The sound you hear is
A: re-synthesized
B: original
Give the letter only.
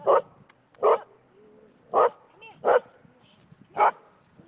B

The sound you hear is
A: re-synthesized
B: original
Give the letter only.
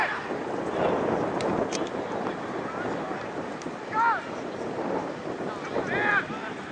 B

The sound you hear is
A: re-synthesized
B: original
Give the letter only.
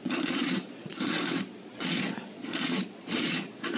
A